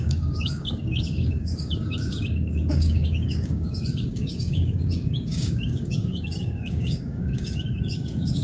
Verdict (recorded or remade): remade